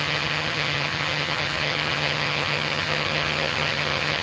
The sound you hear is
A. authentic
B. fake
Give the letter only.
B